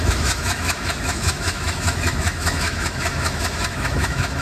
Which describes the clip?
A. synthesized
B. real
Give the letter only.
A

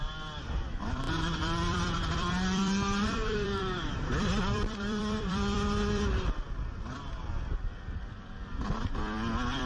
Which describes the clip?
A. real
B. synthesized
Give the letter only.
B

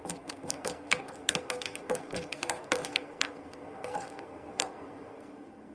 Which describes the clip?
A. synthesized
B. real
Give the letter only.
A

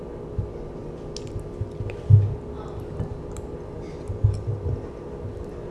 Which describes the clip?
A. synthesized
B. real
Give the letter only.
B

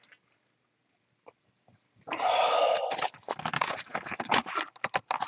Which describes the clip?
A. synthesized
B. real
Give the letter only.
B